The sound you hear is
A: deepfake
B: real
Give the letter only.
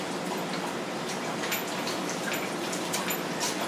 A